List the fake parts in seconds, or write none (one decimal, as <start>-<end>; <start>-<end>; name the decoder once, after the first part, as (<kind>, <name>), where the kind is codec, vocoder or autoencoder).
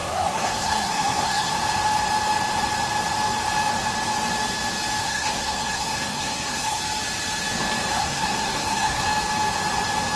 0.0-1.5 (codec, SNAC); 5.0-6.8; 7.9-9.1